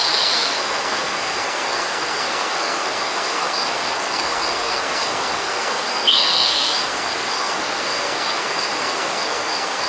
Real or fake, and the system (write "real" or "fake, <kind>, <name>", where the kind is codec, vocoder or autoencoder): fake, codec, SNAC